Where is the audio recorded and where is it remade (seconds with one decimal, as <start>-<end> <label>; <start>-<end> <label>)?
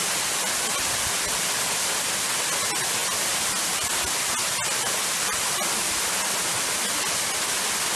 0.0-8.0 recorded